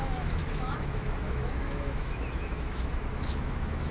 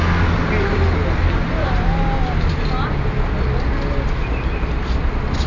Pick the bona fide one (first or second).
second